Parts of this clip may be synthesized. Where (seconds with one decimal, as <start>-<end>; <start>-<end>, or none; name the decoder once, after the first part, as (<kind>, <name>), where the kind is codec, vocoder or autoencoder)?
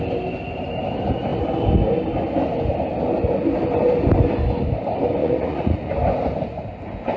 5.2-5.9 (vocoder, Vocos)